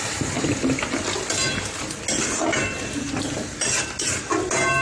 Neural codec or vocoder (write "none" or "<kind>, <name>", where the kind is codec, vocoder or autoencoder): none